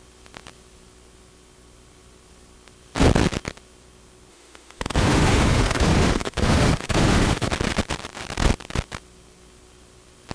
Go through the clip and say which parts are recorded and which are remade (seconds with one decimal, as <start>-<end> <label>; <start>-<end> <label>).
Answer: 0.0-4.3 recorded; 4.3-7.5 remade; 7.5-10.3 recorded